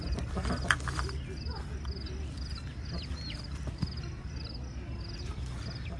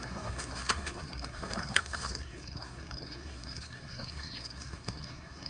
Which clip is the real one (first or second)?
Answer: first